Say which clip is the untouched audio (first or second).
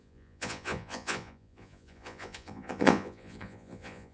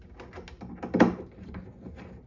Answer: second